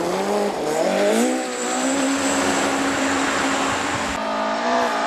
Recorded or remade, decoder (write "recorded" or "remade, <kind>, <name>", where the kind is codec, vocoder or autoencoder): recorded